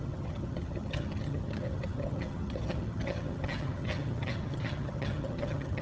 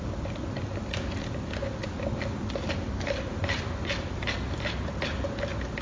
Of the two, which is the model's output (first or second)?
first